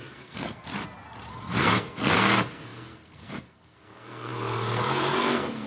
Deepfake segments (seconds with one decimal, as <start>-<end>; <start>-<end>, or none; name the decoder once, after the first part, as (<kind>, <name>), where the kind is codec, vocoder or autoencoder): 0.0-0.7 (codec, SNAC); 1.3-5.7